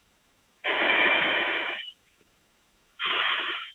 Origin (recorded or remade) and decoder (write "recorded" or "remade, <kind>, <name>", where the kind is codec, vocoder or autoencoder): remade, autoencoder, DAC-VAE